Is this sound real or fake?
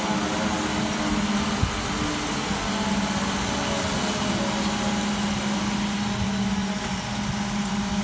real